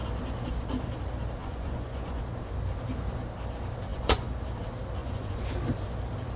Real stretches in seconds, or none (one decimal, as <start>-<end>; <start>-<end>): 0.0-1.4; 2.2-3.9; 4.4-5.0; 5.5-6.4